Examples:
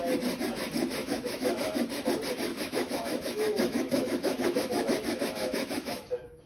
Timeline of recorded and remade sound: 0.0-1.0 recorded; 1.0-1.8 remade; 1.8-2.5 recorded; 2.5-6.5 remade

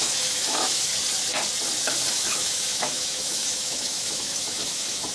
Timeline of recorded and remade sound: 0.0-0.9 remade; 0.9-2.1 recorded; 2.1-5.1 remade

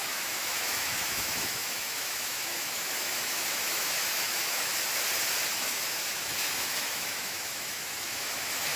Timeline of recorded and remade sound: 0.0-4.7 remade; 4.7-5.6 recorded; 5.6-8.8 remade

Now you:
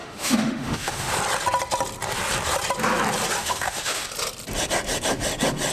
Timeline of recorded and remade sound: 0.0-1.1 remade; 1.1-3.4 recorded; 3.4-4.1 remade; 4.1-5.7 recorded